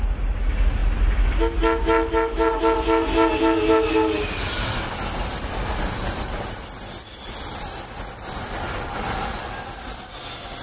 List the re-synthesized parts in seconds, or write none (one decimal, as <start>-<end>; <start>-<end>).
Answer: none